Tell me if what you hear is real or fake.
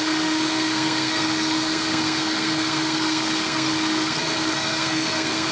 fake